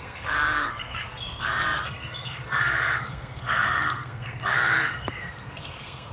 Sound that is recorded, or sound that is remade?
remade